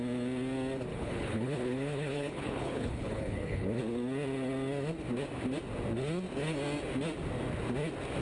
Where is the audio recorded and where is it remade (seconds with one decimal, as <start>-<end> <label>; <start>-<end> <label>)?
0.0-0.9 recorded; 0.9-3.8 remade; 3.8-8.2 recorded